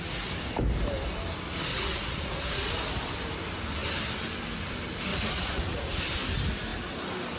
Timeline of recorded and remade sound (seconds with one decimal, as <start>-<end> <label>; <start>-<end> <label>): 0.0-1.7 recorded; 1.7-2.7 remade; 2.7-5.1 recorded; 5.1-6.0 remade; 6.0-7.4 recorded